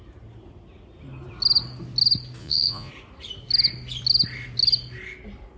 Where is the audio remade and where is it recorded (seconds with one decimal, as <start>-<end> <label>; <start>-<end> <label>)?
0.0-2.4 recorded; 2.4-2.9 remade; 2.9-5.6 recorded